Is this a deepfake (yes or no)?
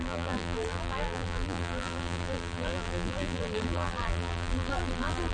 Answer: yes